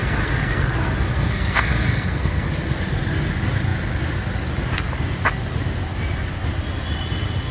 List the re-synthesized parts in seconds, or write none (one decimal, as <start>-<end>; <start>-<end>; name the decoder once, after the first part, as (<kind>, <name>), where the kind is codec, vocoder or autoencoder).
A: 0.0-2.5 (codec, SNAC)